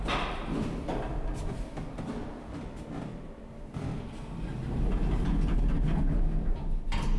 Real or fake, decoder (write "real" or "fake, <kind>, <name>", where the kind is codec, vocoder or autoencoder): real